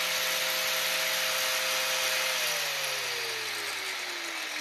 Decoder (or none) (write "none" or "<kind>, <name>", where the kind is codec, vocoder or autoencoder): none